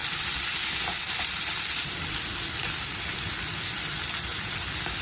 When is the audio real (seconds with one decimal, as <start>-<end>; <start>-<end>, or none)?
0.0-5.0